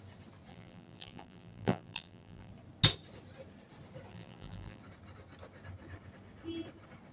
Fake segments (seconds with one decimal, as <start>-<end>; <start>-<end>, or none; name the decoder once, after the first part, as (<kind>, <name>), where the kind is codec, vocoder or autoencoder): 0.5-2.5 (vocoder, BigVGAN v2); 4.1-4.8